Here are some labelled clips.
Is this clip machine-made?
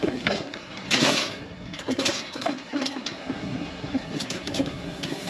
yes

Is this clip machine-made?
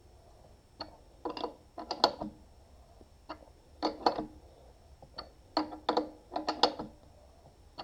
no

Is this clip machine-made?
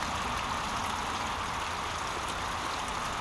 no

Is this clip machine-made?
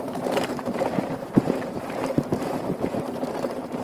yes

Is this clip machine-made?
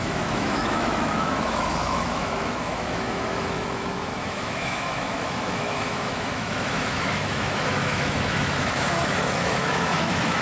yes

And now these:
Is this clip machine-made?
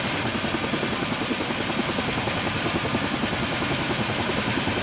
no